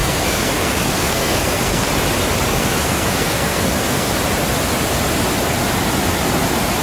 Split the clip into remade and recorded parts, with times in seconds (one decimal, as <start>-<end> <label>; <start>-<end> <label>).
0.0-1.9 remade; 1.9-2.5 recorded; 2.5-4.1 remade; 4.1-6.8 recorded